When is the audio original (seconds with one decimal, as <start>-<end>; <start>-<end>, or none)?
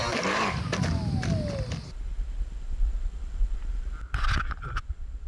0.6-5.3